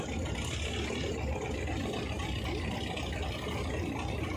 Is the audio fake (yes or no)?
no